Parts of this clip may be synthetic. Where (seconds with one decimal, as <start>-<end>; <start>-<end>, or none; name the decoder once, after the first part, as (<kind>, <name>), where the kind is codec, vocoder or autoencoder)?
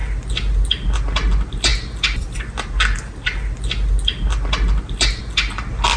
none